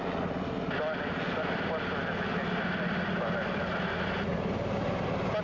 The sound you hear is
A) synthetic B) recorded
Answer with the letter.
B